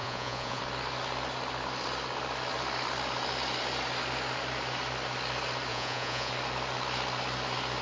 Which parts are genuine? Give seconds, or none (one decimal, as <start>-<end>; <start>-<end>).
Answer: 0.6-5.7; 6.3-7.8